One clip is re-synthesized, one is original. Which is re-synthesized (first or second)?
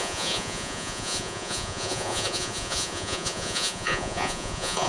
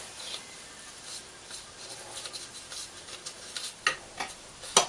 first